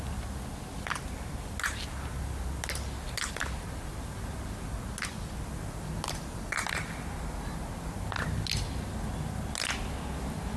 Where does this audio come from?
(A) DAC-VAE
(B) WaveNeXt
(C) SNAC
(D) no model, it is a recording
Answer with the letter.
D